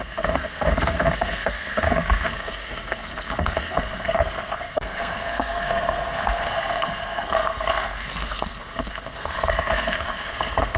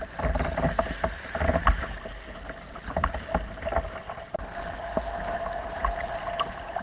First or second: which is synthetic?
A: first